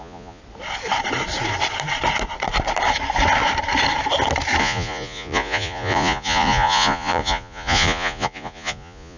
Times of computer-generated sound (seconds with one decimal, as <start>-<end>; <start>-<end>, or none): 0.0-0.4; 4.6-9.2